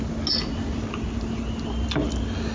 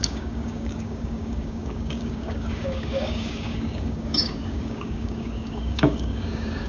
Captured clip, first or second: first